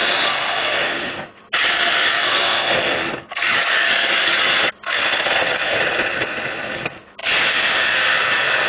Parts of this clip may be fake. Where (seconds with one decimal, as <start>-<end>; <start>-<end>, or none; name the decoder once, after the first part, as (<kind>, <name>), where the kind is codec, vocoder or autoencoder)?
3.0-4.6 (codec, DAC)